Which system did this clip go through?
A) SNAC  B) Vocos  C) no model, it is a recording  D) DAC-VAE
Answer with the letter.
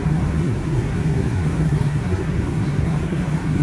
A